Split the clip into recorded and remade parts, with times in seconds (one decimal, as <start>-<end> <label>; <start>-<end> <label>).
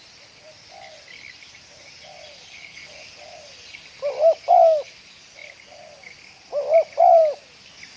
0.0-8.0 recorded